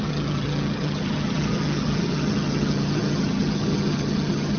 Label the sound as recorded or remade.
remade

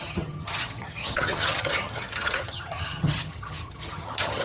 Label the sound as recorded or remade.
remade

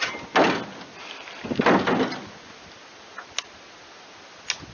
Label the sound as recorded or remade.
recorded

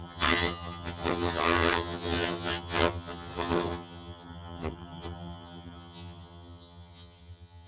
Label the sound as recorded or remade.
remade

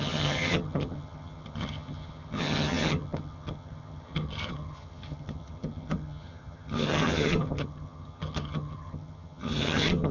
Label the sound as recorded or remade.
remade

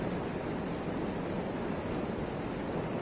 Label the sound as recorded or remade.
recorded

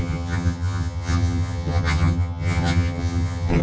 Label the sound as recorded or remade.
remade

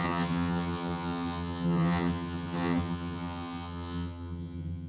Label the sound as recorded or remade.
remade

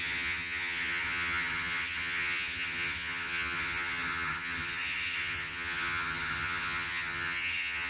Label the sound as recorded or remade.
remade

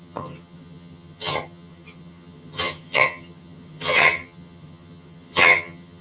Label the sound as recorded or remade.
remade